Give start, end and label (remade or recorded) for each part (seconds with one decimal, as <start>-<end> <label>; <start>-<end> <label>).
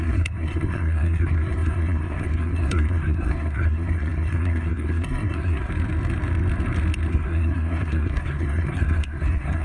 0.0-5.7 remade; 5.7-7.1 recorded; 7.1-9.6 remade